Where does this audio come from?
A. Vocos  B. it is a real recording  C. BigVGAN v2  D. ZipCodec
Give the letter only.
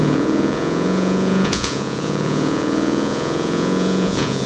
A